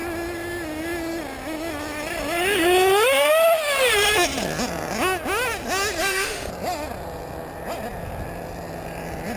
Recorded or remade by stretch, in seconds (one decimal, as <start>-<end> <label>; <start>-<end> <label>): 0.0-6.0 recorded; 6.0-6.5 remade; 6.5-9.4 recorded

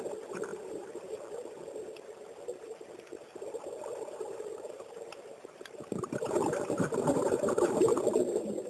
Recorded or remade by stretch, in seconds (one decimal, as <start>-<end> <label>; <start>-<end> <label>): 0.0-0.5 recorded; 0.5-1.1 remade; 1.1-3.9 recorded; 3.9-8.7 remade

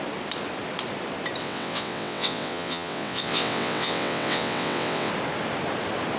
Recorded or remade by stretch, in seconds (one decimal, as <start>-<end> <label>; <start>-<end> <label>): 0.0-1.4 recorded; 1.4-5.1 remade; 5.1-6.2 recorded

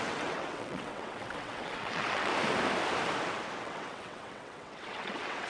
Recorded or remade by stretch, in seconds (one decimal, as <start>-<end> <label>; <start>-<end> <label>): 0.0-2.3 remade; 2.3-3.6 recorded; 3.6-5.5 remade

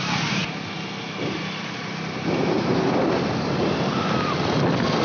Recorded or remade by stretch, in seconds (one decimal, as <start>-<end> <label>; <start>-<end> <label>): 0.0-5.0 recorded

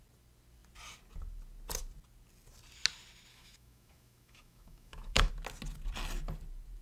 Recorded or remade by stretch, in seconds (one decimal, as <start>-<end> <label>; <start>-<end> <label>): 0.0-3.3 recorded; 3.3-5.3 remade; 5.3-6.8 recorded

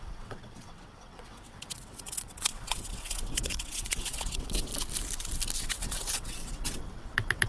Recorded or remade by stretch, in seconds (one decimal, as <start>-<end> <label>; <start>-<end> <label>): 0.0-4.7 remade; 4.7-5.6 recorded; 5.6-7.5 remade